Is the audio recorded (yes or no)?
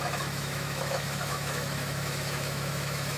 no